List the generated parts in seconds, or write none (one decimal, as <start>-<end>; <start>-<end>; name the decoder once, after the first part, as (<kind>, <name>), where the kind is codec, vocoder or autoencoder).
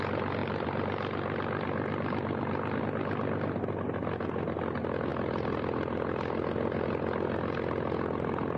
0.4-2.8 (vocoder, BigVGAN v2)